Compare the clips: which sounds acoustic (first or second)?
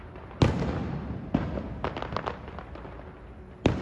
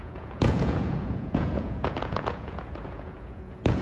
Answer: first